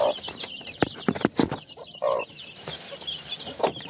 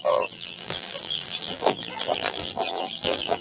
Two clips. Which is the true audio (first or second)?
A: first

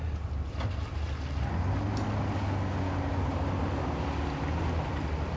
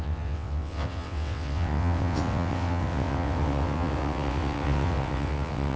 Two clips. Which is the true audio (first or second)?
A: first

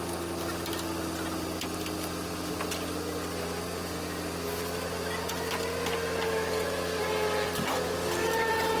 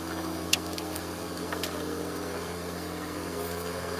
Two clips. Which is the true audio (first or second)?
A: first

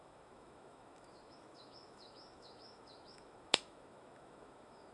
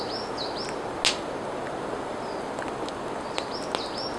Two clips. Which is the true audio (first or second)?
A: second